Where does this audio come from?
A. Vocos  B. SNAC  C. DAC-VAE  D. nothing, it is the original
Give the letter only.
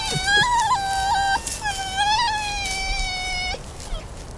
D